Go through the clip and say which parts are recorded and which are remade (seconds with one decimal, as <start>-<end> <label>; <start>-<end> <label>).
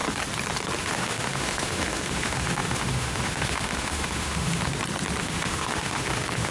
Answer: 0.0-0.8 recorded; 0.8-4.7 remade; 4.7-5.2 recorded; 5.2-6.5 remade